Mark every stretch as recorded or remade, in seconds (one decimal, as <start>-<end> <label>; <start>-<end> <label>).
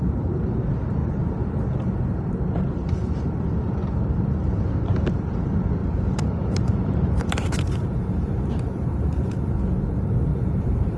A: 0.0-5.8 recorded; 5.8-9.5 remade; 9.5-10.3 recorded; 10.3-11.0 remade